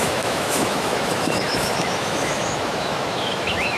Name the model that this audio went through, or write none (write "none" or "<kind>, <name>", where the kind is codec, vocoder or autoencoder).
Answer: autoencoder, DAC-VAE